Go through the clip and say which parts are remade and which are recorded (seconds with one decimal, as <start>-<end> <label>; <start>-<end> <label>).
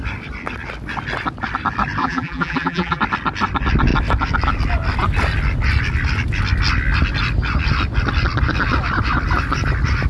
0.0-2.0 recorded; 2.0-3.0 remade; 3.0-10.1 recorded